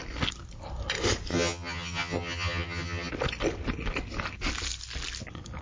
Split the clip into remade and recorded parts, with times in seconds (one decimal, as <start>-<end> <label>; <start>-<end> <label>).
0.0-1.3 recorded; 1.3-3.1 remade; 3.1-5.6 recorded